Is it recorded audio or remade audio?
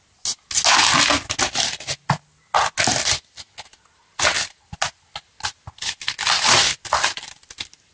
recorded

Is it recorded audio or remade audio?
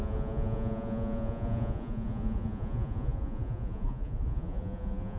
remade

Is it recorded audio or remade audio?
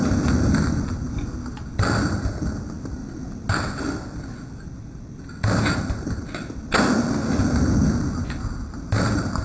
recorded